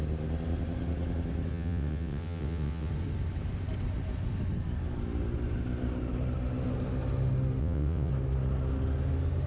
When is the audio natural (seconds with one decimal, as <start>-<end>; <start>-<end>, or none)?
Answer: 0.0-1.5; 2.9-7.6; 8.1-9.5